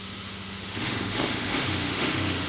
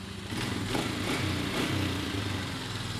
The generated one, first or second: first